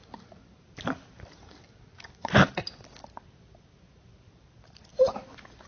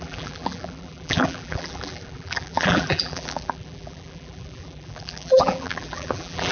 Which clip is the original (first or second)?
first